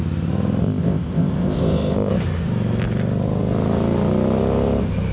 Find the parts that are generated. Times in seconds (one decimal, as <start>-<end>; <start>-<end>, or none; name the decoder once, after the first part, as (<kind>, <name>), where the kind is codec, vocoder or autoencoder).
0.6-2.1 (codec, ZipCodec)